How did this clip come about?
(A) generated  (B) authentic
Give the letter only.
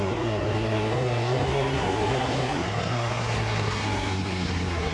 A